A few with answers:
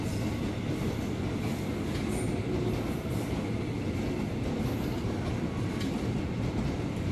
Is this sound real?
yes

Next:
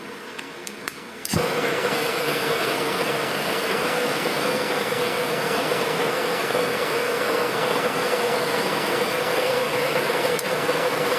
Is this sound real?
no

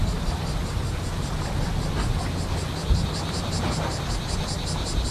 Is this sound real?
yes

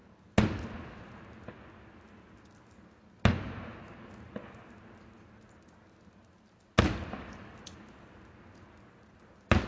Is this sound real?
yes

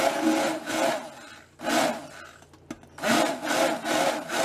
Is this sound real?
yes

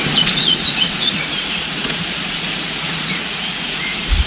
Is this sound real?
no